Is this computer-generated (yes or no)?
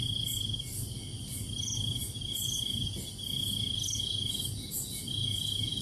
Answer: no